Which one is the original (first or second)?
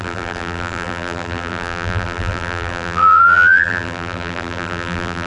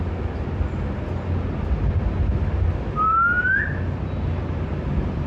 second